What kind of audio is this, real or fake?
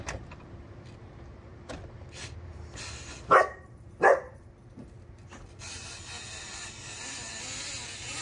fake